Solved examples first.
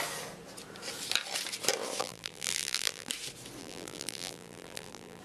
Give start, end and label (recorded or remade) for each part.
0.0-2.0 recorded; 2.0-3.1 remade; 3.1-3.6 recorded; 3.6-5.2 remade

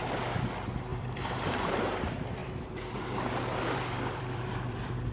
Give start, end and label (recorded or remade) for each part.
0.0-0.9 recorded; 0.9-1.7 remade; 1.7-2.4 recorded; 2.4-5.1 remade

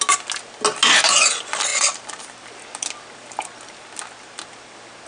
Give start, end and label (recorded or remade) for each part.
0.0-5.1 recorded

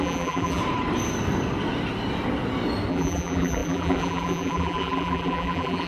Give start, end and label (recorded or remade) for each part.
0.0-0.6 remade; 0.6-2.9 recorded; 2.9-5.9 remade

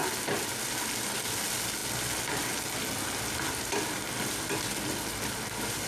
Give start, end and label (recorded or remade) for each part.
0.0-5.9 recorded

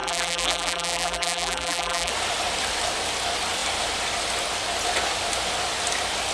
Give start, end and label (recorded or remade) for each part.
0.0-2.1 remade; 2.1-6.3 recorded